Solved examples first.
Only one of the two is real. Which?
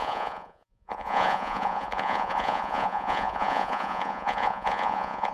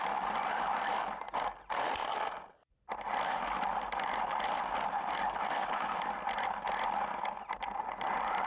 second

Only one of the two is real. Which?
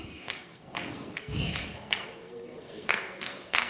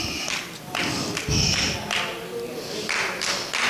second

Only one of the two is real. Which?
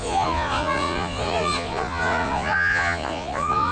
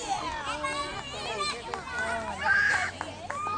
second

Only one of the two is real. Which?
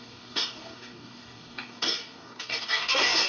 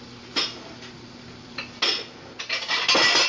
second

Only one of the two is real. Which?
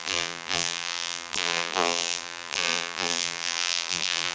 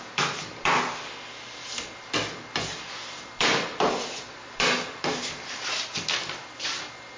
second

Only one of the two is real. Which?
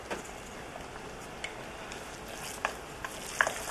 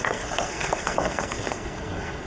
first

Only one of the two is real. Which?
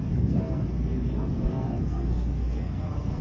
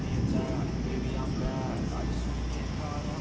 second